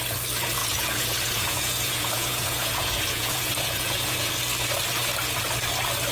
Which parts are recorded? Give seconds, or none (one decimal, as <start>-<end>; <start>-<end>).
0.0-0.6; 4.3-6.1